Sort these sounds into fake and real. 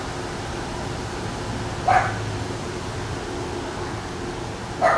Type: real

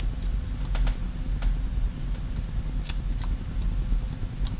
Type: real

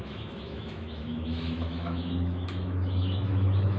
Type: fake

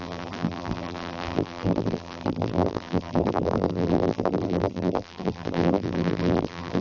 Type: fake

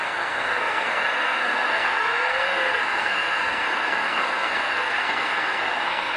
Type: fake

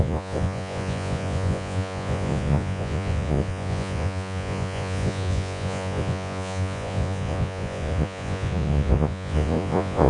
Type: fake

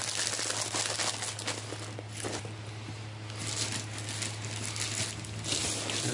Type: real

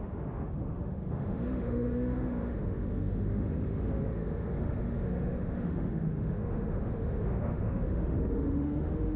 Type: fake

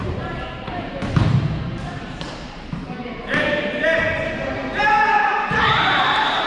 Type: fake